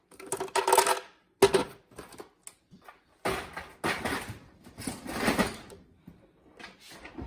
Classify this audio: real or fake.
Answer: real